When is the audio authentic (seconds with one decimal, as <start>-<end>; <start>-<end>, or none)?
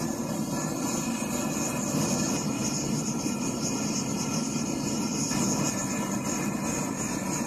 0.0-7.5